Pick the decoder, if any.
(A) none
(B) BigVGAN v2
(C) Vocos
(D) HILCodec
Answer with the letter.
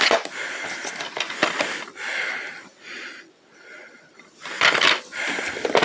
B